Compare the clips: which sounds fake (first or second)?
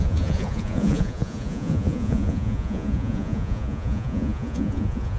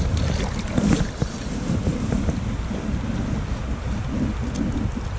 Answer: first